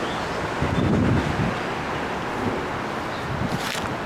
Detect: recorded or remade recorded